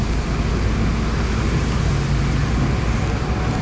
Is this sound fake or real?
real